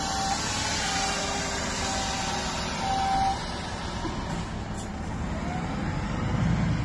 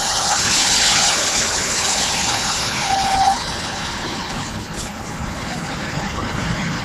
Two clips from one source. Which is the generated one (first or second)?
second